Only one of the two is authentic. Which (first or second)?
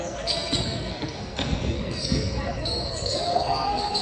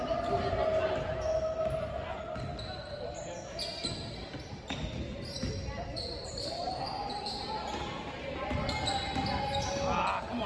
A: second